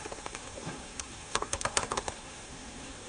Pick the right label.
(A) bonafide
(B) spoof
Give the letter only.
B